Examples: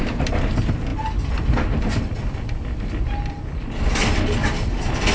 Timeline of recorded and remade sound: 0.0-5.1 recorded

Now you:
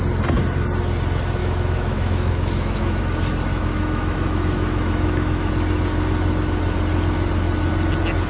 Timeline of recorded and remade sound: 0.0-1.4 recorded; 1.4-3.0 remade; 3.0-3.5 recorded; 3.5-5.5 remade; 5.5-8.3 recorded